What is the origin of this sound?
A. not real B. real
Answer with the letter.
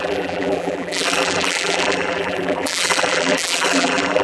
A